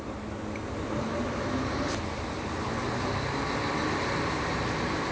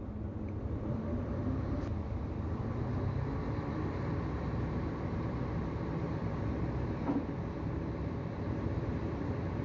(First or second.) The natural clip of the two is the first